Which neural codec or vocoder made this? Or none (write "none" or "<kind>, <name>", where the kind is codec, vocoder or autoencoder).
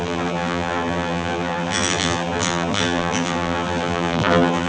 vocoder, BigVGAN v2